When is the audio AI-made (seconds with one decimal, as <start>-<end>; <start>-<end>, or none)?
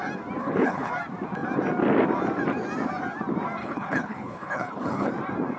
0.4-0.9; 3.6-5.1